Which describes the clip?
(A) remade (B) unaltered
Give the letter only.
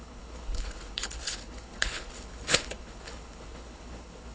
A